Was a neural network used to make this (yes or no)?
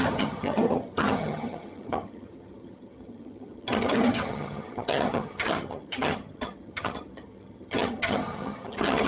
yes